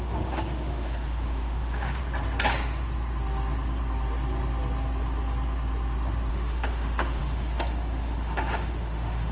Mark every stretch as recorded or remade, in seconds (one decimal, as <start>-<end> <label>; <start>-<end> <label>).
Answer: 0.0-2.0 remade; 2.0-6.3 recorded; 6.3-9.3 remade